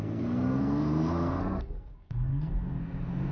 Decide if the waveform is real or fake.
fake